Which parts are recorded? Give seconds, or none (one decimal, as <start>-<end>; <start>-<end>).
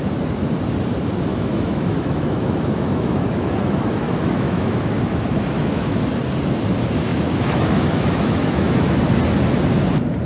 0.0-1.3; 6.0-7.1; 9.0-10.2